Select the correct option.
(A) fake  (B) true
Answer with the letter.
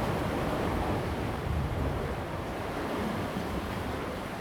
A